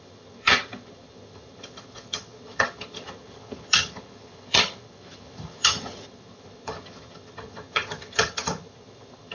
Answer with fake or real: fake